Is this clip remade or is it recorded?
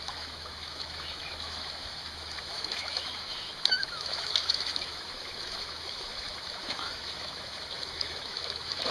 remade